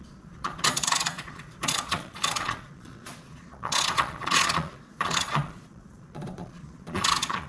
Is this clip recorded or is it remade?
remade